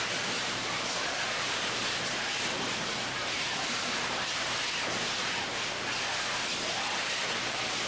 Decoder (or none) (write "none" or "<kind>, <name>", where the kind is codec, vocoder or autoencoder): vocoder, BigVGAN v2